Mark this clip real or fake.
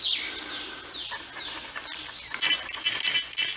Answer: real